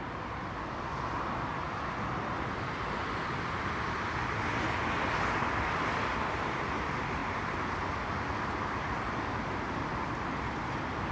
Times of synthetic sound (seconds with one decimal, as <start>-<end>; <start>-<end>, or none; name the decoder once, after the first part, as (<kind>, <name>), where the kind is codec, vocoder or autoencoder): none